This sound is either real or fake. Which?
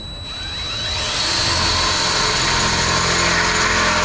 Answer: real